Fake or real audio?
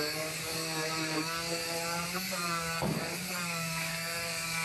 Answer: fake